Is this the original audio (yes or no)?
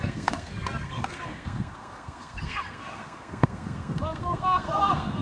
no